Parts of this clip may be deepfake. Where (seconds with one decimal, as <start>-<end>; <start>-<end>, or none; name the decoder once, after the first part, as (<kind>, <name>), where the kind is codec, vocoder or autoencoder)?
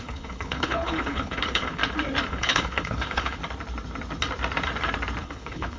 0.0-1.8 (codec, HILCodec); 2.3-3.4; 5.2-5.8